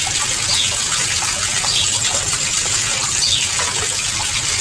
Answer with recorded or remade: recorded